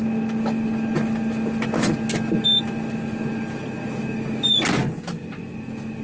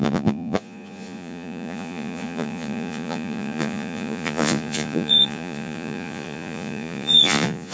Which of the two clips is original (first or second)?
first